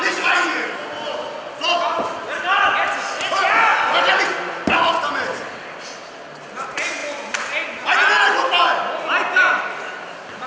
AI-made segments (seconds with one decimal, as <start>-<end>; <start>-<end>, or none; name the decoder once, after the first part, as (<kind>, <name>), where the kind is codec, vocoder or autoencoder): none